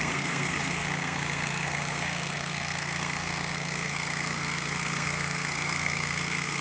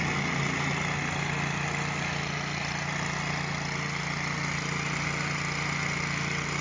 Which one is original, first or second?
second